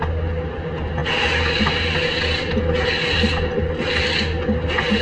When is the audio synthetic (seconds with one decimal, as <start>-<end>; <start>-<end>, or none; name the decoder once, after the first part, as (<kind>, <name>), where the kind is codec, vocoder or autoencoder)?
none